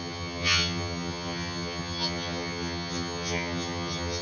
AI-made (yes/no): yes